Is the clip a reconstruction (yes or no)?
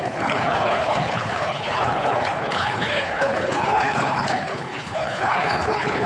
yes